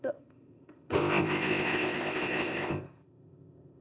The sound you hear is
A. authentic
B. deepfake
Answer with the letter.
B